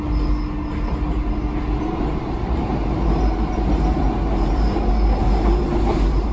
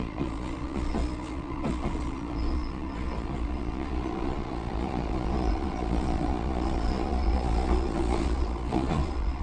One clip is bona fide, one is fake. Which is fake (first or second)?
second